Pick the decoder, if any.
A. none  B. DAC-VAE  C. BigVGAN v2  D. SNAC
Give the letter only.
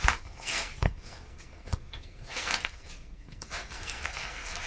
D